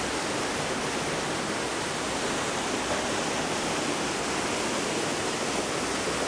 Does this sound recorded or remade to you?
recorded